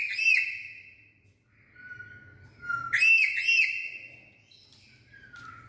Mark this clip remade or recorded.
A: recorded